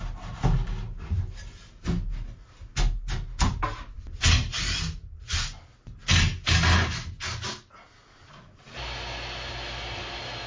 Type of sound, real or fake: real